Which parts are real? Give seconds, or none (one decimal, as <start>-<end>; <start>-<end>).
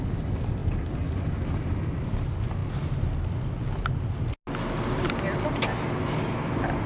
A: 0.0-6.9